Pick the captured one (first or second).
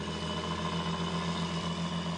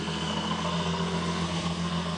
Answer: first